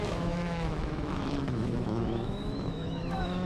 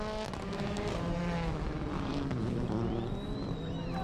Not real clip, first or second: first